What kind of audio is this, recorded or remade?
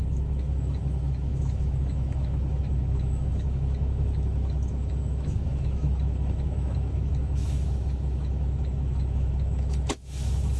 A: remade